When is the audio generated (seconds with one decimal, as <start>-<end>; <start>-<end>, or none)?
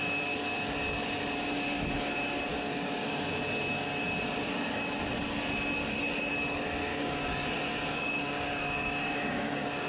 2.5-3.1; 6.9-9.9